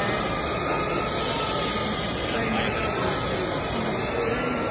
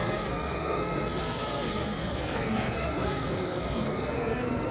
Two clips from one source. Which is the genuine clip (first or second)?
first